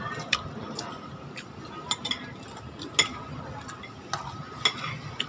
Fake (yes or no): no